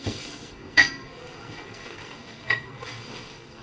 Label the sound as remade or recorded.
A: remade